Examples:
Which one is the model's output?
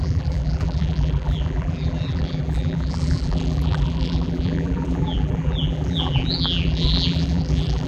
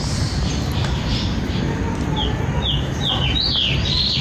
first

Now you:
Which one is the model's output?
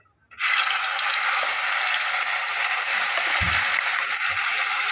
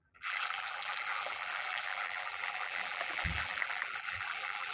second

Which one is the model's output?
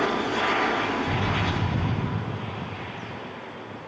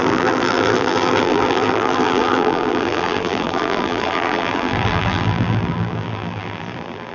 second